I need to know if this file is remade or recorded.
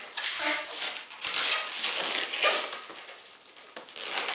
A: recorded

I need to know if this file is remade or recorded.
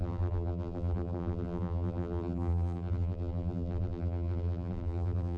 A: remade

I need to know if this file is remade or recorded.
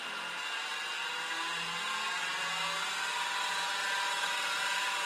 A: recorded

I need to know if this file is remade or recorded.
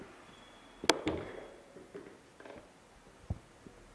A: recorded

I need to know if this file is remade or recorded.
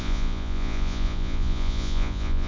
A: remade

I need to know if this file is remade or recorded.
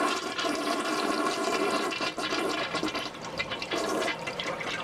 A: remade